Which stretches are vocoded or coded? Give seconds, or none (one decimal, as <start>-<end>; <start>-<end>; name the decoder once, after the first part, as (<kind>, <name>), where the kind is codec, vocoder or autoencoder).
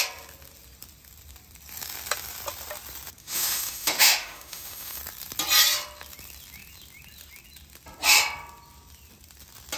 3.2-5.0 (autoencoder, DAC-VAE)